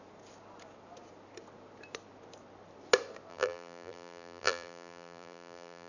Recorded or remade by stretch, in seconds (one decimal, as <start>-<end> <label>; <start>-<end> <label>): 0.0-3.3 recorded; 3.3-5.9 remade

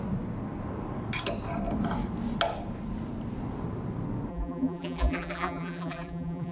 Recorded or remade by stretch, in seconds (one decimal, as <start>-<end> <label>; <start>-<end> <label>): 0.0-4.3 recorded; 4.3-6.5 remade